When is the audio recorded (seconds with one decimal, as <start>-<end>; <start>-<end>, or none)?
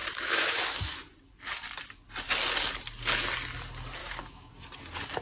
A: 0.8-4.0; 4.5-5.2